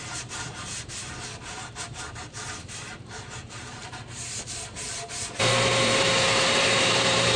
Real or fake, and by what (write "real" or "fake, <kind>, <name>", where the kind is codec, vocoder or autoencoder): fake, vocoder, BigVGAN v2